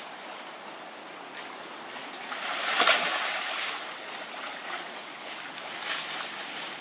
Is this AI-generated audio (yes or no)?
no